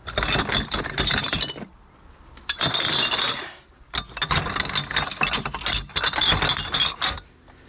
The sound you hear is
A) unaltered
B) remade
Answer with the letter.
A